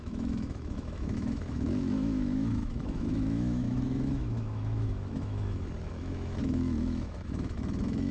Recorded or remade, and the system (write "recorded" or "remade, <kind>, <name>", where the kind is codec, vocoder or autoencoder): remade, autoencoder, DAC-VAE